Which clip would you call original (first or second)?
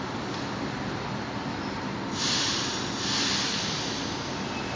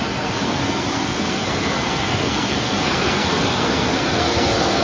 first